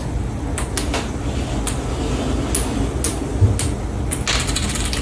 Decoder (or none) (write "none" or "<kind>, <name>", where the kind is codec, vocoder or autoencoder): none